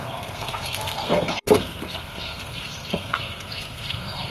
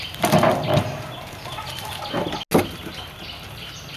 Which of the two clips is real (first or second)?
second